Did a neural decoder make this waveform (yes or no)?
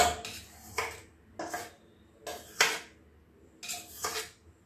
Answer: no